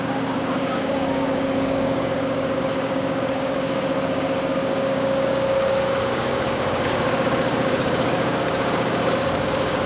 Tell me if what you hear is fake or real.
fake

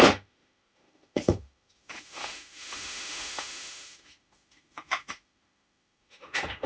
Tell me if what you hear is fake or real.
fake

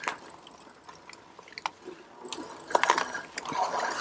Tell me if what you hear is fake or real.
real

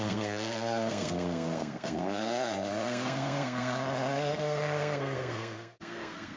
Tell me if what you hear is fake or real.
fake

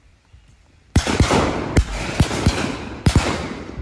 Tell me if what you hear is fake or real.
fake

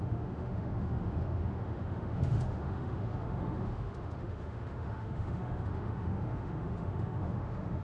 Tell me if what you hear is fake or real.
fake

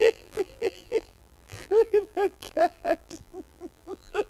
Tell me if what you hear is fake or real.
fake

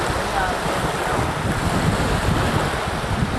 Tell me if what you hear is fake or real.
real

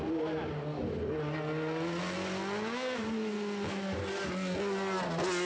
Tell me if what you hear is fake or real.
real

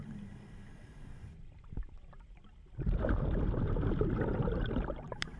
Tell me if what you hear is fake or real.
real